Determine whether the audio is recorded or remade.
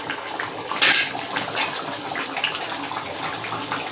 recorded